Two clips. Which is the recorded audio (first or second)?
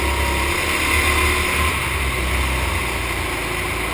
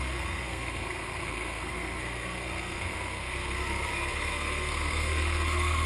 first